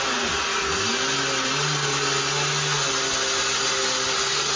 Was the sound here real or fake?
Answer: real